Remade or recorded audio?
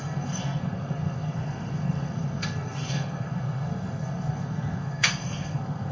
remade